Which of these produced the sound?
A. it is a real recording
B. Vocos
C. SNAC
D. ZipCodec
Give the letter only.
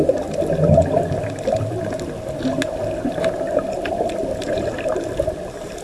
A